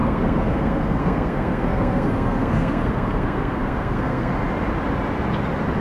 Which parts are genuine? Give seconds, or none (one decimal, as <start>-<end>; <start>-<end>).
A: 4.3-5.8